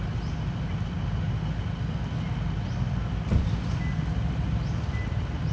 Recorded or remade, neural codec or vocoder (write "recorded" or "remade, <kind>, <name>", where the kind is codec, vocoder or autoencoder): recorded